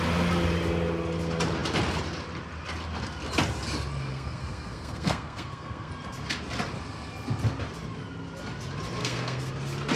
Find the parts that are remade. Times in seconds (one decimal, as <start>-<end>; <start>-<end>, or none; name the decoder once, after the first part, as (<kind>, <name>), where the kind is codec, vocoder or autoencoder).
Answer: 4.1-5.9 (codec, SNAC); 9.0-9.5